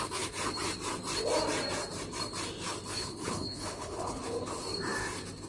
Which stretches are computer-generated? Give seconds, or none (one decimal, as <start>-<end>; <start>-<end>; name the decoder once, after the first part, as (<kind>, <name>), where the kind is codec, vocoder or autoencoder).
2.9-4.2 (codec, HILCodec)